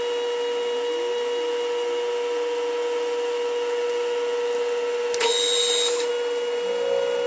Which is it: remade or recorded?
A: recorded